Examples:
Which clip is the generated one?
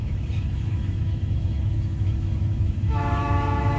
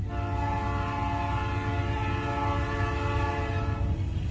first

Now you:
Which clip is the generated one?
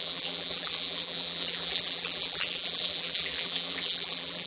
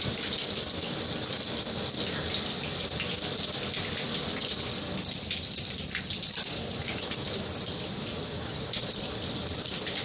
first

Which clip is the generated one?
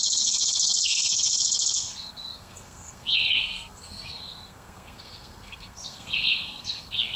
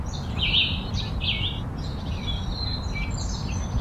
first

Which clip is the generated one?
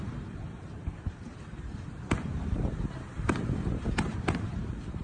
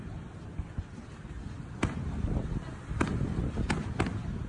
first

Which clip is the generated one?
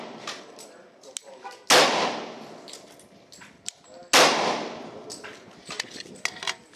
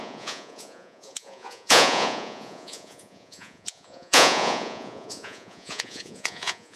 second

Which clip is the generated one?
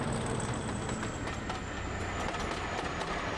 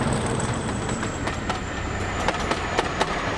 second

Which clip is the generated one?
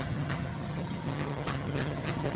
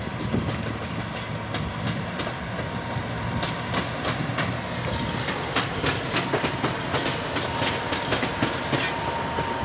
first